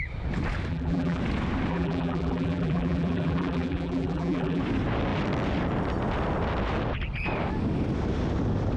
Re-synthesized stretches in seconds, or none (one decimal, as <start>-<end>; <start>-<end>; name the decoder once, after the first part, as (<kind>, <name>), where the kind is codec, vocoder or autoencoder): 0.7-1.2 (vocoder, BigVGAN v2); 1.7-4.6